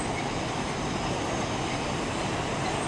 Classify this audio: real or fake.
fake